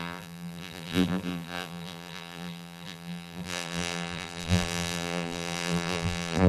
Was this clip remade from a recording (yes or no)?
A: yes